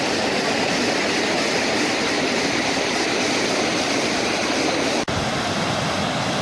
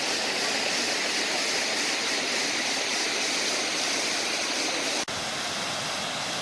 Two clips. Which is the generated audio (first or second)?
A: first